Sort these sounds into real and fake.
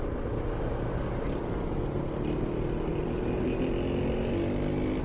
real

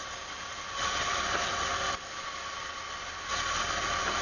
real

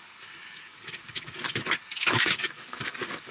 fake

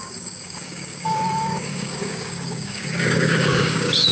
fake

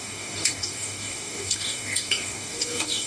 fake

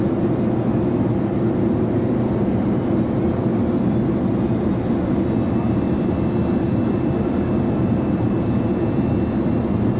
real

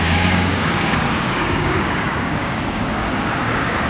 fake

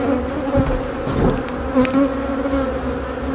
real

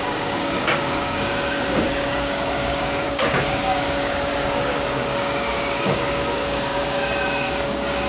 fake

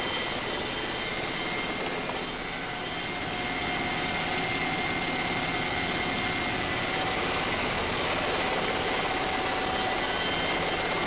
real